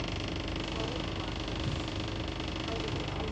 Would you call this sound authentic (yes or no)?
yes